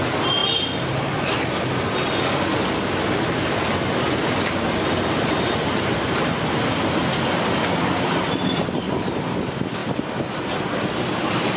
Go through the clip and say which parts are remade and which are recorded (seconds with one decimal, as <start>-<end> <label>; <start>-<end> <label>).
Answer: 0.0-11.6 recorded